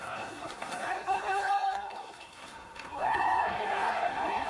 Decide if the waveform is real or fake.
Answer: fake